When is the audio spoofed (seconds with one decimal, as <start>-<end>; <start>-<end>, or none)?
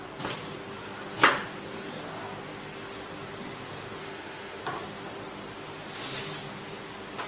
4.0-4.6